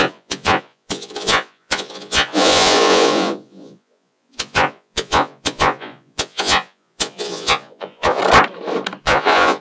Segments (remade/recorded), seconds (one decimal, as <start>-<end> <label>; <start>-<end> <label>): 0.0-8.2 remade; 8.2-9.0 recorded; 9.0-9.6 remade